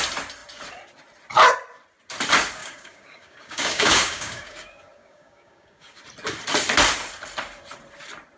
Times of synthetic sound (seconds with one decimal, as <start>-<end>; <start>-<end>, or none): 2.6-6.0